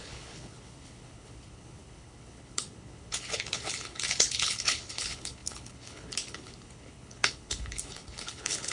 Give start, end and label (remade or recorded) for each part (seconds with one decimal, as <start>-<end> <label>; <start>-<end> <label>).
0.0-8.7 remade